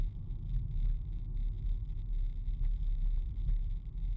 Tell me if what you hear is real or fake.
real